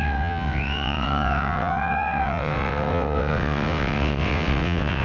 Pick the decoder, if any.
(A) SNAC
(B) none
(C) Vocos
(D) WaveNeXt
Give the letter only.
D